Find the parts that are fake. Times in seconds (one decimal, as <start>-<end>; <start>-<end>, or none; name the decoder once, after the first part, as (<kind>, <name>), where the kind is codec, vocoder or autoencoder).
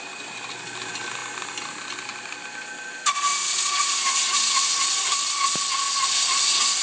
3.3-4.7 (vocoder, Vocos)